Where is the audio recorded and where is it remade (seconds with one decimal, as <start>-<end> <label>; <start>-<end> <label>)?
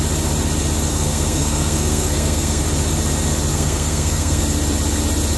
0.0-0.9 recorded; 0.9-2.6 remade; 2.6-3.5 recorded; 3.5-4.4 remade; 4.4-5.4 recorded